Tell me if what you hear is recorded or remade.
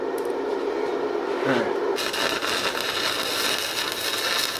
recorded